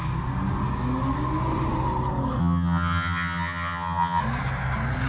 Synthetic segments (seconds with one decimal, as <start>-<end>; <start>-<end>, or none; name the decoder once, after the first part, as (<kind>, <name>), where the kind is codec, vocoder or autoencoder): 2.4-4.2 (vocoder, HiFi-GAN)